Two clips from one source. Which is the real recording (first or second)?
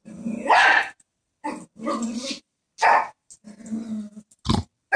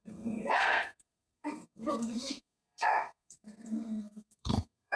first